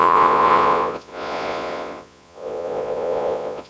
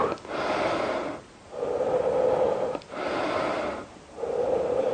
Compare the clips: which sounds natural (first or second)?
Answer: second